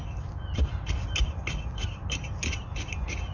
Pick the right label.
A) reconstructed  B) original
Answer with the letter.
B